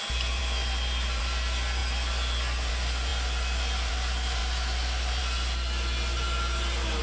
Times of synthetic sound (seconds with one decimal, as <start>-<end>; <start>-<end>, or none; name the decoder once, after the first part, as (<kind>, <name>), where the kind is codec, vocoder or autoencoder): none